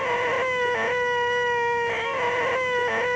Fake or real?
real